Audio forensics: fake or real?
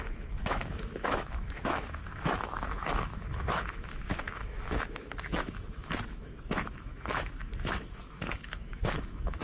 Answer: fake